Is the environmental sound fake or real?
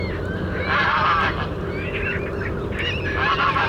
real